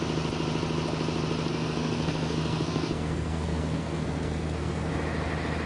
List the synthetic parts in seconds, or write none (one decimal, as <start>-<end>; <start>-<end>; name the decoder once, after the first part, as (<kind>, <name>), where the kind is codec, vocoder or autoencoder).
1.5-4.9 (codec, SNAC)